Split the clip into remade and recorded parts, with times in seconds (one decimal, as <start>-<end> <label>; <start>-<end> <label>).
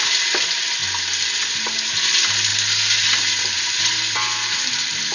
0.0-5.1 recorded